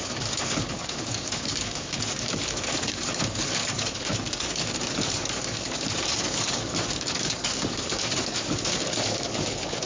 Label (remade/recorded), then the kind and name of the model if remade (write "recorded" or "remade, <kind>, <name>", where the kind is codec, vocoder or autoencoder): remade, codec, DAC